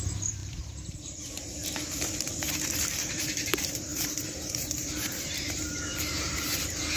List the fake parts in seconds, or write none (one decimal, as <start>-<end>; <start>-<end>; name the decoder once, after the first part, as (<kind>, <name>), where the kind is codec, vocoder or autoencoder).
0.0-1.6 (vocoder, BigVGAN v2); 3.1-7.0